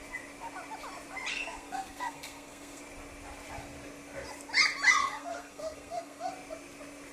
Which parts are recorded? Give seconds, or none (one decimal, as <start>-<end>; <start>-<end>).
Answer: 0.0-1.3; 2.8-5.0; 6.3-7.1

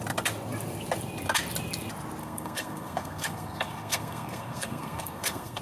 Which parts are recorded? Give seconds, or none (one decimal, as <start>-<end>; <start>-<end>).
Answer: 0.0-2.2

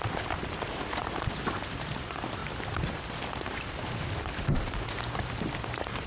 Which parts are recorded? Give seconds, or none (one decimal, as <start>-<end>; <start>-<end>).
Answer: 2.4-4.2

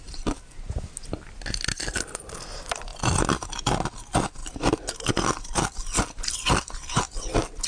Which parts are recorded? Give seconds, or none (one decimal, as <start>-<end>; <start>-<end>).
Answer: 0.0-7.7

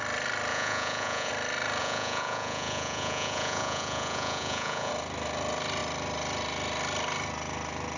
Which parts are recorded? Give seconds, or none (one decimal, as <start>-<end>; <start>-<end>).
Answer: 0.0-0.5; 1.3-1.8; 4.9-8.0

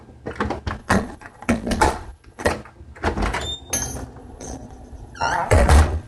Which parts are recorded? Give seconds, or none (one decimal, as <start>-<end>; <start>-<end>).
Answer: 0.0-0.8; 2.5-4.2

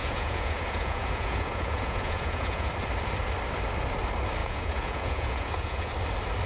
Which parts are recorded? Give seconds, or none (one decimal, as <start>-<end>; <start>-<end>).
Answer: 2.7-4.4; 5.9-6.5